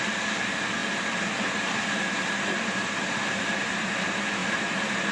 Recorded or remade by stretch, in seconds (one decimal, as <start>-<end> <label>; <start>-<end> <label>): 0.0-4.4 recorded; 4.4-5.1 remade